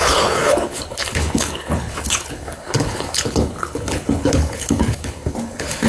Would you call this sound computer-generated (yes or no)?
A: yes